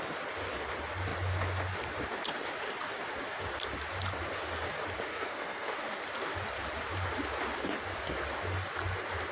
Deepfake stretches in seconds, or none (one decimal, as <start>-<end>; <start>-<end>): 5.1-5.7